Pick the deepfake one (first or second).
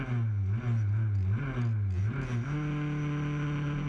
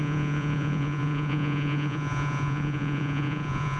second